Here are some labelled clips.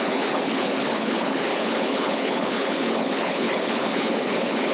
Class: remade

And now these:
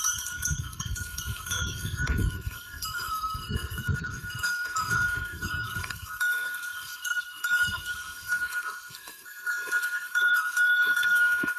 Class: remade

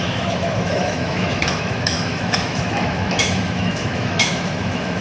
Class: remade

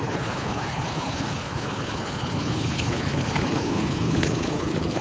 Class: remade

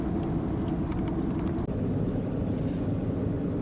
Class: recorded